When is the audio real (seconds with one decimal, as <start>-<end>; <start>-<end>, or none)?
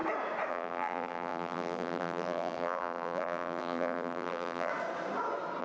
0.0-0.5; 4.7-5.6